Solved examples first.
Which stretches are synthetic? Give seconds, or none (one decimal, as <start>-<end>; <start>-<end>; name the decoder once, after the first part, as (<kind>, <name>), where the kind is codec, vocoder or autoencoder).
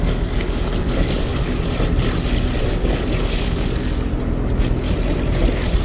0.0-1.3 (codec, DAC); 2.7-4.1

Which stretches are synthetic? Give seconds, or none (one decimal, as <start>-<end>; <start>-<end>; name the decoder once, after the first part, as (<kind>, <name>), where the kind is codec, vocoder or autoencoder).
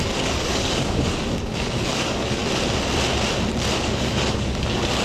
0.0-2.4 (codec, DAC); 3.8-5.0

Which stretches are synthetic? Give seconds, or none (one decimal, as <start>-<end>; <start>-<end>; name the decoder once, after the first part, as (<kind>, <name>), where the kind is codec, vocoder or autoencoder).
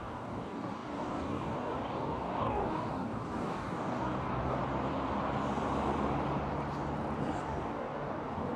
0.0-4.6 (codec, DAC); 7.4-8.6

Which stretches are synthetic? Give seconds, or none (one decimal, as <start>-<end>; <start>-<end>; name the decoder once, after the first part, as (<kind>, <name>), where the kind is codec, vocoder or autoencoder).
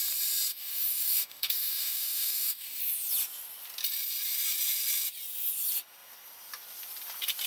0.5-2.8 (codec, DAC)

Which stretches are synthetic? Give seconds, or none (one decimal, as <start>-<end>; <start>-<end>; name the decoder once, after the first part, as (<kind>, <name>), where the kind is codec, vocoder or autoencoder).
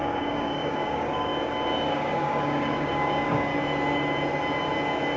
0.0-1.3 (codec, DAC); 1.9-3.5